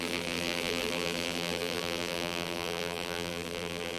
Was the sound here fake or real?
fake